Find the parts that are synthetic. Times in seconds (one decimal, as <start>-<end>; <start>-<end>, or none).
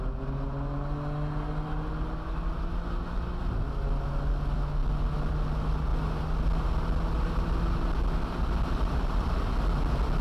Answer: none